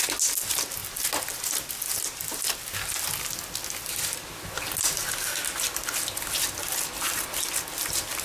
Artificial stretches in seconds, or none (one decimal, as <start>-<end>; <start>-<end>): none

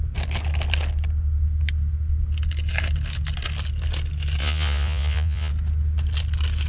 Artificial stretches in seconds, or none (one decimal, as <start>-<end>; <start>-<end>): 4.4-5.5

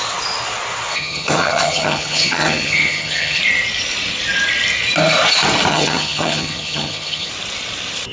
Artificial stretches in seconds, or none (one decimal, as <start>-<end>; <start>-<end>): 0.9-3.4; 5.7-7.3